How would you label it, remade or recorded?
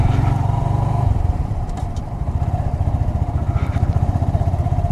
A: remade